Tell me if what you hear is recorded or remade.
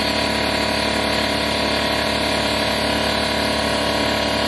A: recorded